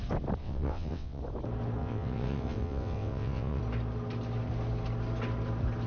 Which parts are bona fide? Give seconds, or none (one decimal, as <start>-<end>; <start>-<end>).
0.0-0.4; 1.2-1.8; 3.6-5.9